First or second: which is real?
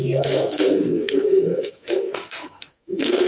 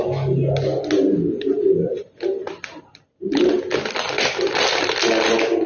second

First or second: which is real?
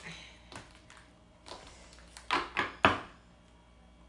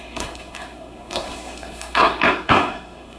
first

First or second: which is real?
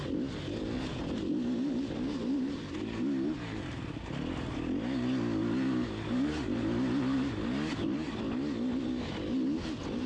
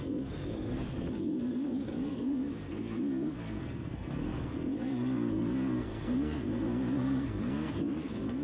first